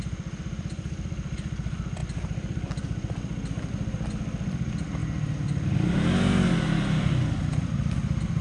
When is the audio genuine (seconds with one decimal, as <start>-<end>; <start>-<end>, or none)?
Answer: 0.0-8.4